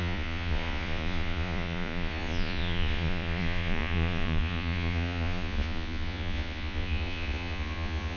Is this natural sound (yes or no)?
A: no